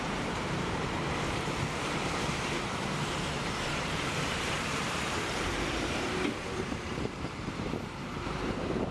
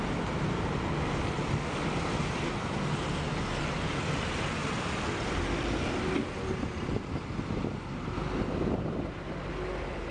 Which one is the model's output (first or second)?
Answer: first